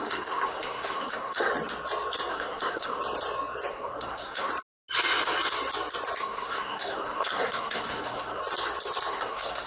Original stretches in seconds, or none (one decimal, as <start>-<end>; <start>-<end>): 1.5-2.3; 3.0-3.7; 4.5-6.2; 8.4-9.1